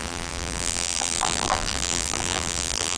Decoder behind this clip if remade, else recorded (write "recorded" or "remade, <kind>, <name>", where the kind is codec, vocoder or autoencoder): remade, vocoder, BigVGAN v2